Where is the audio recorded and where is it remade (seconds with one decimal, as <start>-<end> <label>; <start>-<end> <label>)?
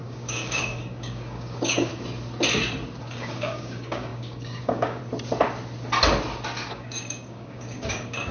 0.0-1.9 remade; 1.9-3.0 recorded; 3.0-5.0 remade; 5.0-6.7 recorded; 6.7-8.3 remade